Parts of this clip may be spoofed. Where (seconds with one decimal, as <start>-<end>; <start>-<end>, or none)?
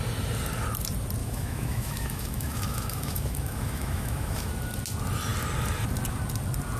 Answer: 1.2-4.5